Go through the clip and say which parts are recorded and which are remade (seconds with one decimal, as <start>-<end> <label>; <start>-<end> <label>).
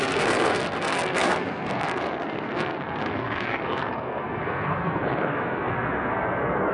0.0-6.7 remade